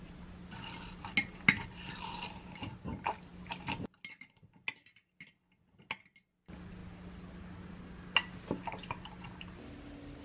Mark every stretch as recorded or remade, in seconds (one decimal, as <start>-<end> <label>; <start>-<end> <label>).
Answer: 0.0-10.2 recorded